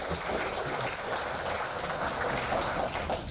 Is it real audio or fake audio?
real